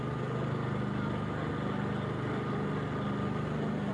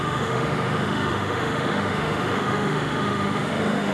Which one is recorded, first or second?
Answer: first